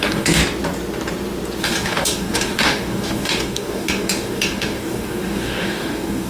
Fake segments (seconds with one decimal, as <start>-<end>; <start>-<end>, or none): 0.0-0.4; 1.6-6.3

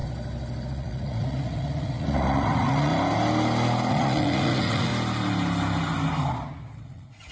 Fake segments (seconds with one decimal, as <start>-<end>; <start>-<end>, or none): 0.7-2.9; 3.9-4.9; 6.8-7.3

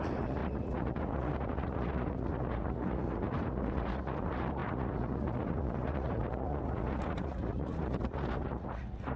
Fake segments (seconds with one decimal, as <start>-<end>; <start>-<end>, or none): 0.0-9.2

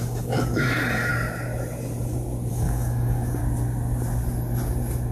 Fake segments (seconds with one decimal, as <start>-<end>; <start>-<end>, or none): 0.0-1.1; 2.5-3.4

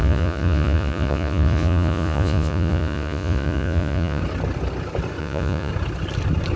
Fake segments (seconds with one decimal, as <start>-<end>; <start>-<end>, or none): 0.0-4.2; 5.2-5.7

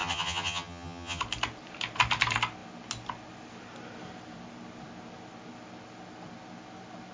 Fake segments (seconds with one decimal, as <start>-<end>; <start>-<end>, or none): 0.0-1.2

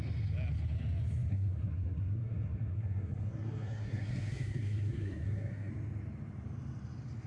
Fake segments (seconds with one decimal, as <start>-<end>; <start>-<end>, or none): 1.3-5.7

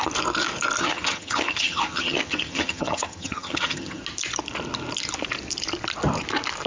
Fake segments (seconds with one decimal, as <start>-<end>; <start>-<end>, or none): 0.8-4.0